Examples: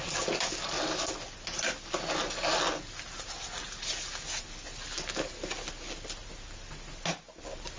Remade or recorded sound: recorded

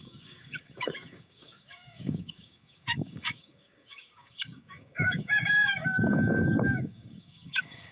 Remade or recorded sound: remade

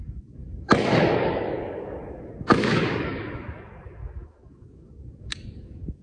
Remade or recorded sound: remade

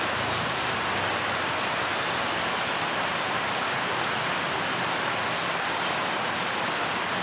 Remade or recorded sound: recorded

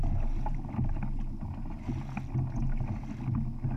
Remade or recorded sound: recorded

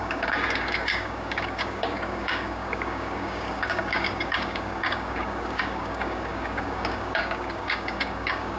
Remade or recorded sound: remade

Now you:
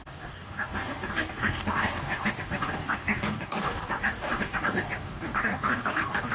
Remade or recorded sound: remade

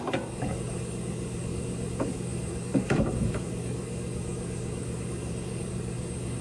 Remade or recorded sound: remade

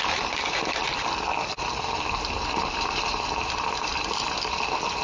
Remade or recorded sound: recorded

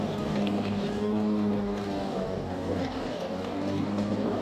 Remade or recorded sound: remade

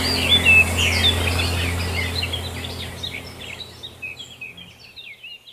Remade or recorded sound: recorded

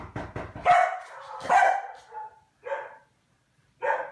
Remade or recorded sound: recorded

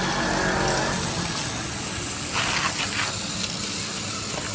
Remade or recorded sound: recorded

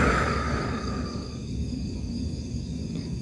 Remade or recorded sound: remade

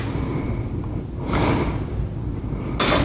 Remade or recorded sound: recorded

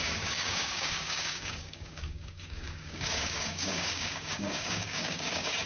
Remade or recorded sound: remade